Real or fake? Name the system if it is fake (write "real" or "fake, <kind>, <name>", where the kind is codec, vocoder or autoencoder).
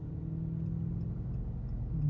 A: real